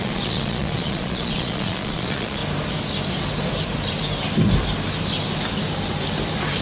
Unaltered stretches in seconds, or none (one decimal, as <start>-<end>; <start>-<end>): 2.4-6.6